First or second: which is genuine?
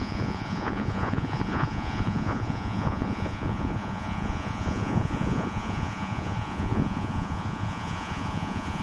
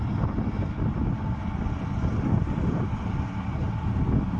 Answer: second